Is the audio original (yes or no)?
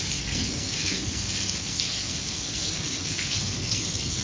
no